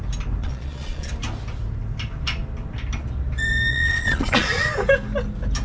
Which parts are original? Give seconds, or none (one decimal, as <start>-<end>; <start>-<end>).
0.0-0.4; 1.1-3.7; 4.7-5.6